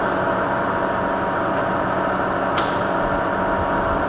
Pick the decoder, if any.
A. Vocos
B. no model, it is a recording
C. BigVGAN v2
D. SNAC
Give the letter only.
B